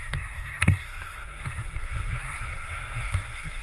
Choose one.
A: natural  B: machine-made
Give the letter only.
B